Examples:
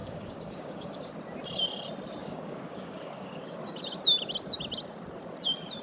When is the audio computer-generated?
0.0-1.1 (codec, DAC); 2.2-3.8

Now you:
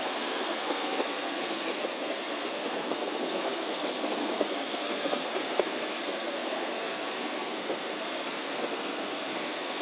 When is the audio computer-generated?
0.0-9.8 (codec, SNAC)

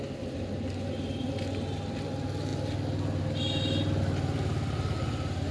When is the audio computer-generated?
none